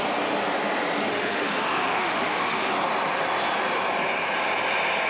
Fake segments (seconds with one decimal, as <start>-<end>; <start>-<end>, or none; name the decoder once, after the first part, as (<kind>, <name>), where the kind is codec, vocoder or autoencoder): 1.1-2.7 (autoencoder, DAC-VAE)